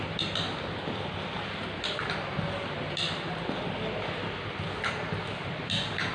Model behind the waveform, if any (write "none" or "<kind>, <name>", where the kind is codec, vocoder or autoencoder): none